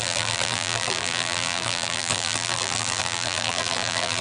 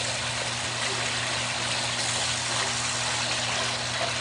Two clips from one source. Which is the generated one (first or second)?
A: first